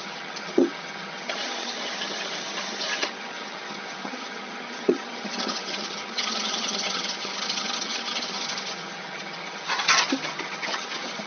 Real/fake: fake